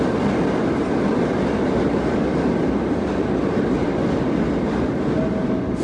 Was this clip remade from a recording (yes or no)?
no